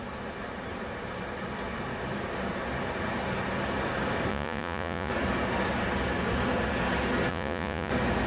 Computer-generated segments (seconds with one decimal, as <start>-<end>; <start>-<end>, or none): 4.3-5.1; 7.3-7.9

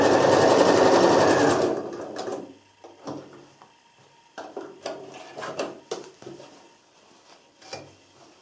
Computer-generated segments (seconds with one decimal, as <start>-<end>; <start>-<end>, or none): none

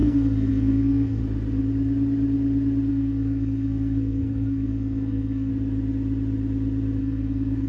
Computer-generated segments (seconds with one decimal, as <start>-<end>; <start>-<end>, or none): 0.0-1.2; 2.9-5.5; 7.0-7.7